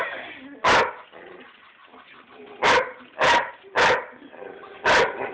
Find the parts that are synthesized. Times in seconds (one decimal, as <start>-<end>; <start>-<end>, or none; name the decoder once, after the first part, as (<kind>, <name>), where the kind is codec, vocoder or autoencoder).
none